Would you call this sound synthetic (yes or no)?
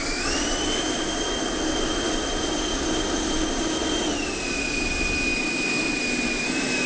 no